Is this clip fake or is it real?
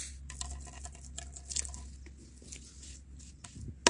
real